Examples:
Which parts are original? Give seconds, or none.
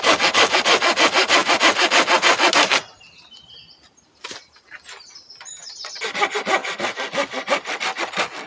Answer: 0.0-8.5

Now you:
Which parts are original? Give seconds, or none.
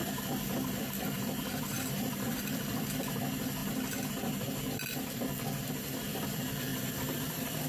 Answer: 3.6-5.7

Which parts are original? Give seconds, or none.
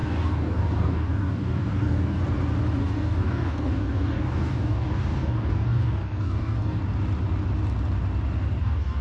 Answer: 2.2-2.8; 6.8-8.6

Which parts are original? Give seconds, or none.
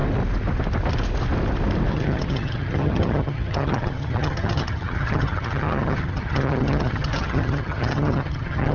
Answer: 0.0-1.9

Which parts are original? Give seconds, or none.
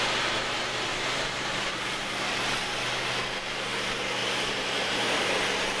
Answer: 0.0-0.9; 2.2-4.2; 5.3-5.8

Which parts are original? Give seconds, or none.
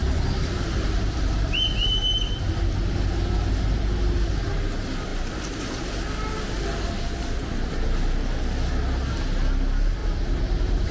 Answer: 2.5-10.0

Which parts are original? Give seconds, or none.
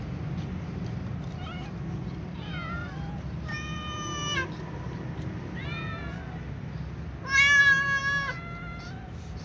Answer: 0.0-2.8; 4.6-9.4